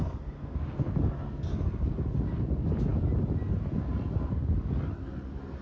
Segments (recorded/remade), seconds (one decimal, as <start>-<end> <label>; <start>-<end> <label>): 0.0-0.9 remade; 0.9-5.6 recorded